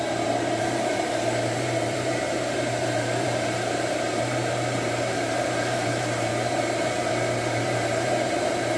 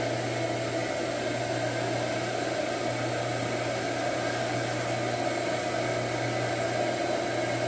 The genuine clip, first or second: second